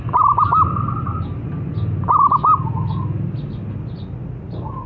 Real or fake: real